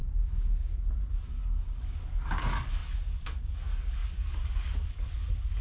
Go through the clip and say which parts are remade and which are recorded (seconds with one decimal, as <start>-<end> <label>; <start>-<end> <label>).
0.0-1.1 recorded; 1.1-5.6 remade